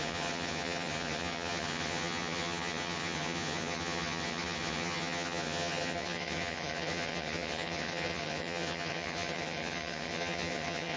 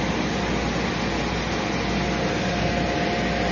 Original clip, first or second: second